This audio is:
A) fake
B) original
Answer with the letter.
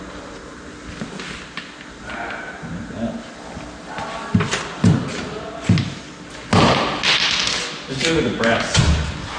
B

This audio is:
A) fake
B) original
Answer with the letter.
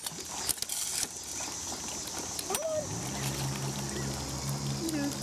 B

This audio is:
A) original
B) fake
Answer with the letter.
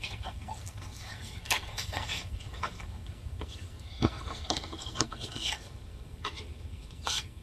B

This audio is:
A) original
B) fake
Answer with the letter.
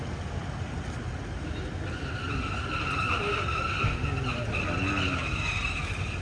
A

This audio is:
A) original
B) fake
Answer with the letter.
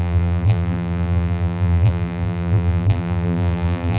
B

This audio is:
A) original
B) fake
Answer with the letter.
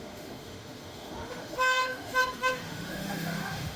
B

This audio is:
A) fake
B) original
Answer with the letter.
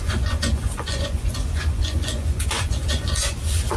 A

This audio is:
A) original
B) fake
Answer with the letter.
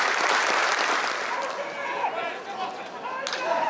A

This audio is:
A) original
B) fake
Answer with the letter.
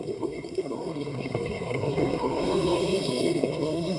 B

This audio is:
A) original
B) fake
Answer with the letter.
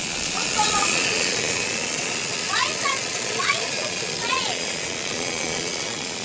B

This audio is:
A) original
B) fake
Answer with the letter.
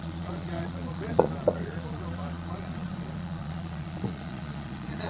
B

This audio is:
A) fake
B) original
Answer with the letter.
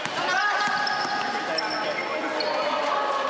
B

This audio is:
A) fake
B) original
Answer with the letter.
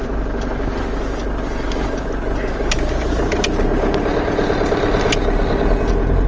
B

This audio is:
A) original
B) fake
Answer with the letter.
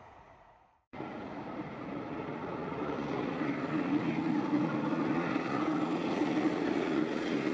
B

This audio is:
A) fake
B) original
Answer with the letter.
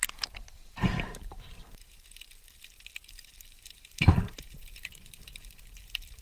A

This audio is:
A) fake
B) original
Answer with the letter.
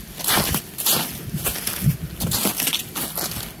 B